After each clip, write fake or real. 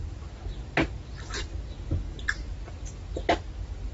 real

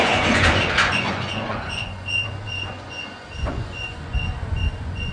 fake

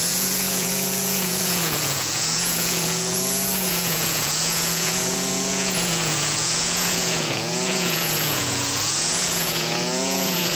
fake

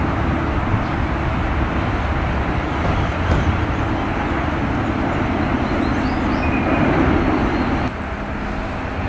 real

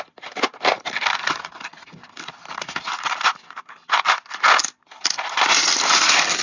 real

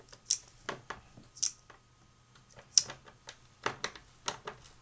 real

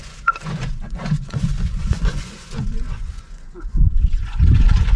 fake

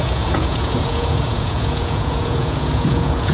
fake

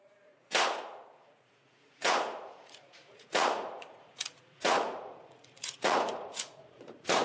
fake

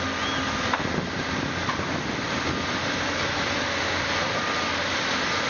real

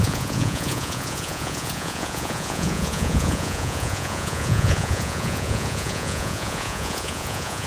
fake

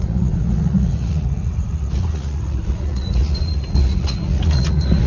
fake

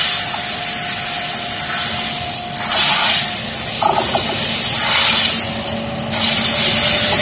real